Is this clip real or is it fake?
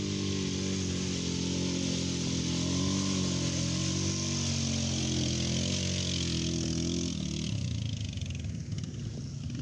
real